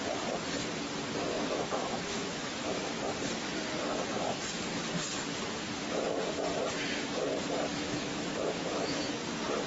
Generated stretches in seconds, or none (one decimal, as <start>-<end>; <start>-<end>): 1.2-3.0; 7.7-9.1